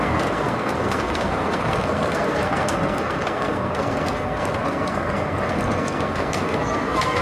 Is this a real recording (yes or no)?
no